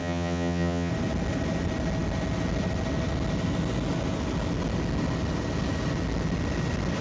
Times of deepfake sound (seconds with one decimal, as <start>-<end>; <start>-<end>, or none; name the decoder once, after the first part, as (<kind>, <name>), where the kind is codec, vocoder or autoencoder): 0.0-0.9 (vocoder, HiFi-GAN)

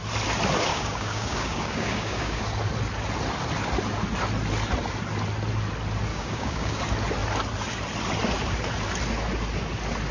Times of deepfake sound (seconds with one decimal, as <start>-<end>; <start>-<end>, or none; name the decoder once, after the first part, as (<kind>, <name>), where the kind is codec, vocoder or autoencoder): 0.7-2.4 (codec, DAC); 6.1-6.8

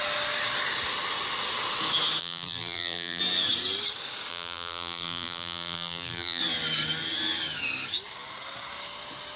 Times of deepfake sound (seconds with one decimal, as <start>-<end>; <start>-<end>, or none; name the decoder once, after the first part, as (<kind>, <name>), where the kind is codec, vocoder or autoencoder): 2.2-3.2 (vocoder, BigVGAN v2); 4.3-6.4

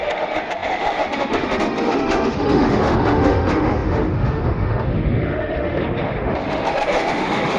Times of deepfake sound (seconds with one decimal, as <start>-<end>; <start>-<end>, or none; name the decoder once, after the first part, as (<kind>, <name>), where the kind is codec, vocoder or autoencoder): 0.0-7.6 (autoencoder, DAC-VAE)

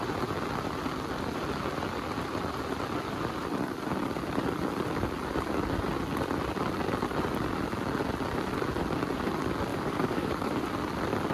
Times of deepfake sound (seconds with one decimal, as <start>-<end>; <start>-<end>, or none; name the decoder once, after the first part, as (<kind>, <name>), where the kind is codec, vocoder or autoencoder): 9.7-10.6 (codec, DAC)

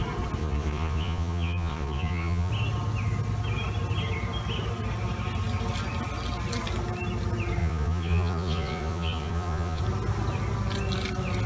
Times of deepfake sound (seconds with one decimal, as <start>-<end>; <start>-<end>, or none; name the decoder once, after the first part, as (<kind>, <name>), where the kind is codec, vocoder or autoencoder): 0.4-2.5 (vocoder, Vocos); 7.6-9.8

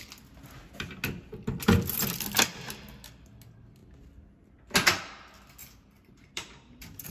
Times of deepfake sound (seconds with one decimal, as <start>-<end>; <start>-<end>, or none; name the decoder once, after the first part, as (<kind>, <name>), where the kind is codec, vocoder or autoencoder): 5.6-7.1 (vocoder, BigVGAN v2)